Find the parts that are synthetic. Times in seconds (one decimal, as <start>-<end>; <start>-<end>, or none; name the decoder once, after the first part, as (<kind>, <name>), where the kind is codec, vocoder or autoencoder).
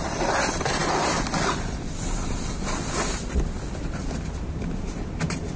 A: 0.0-5.6 (vocoder, BigVGAN v2)